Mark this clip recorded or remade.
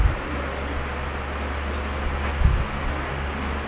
recorded